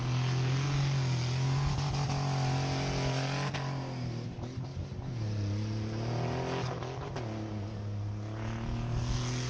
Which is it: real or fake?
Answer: real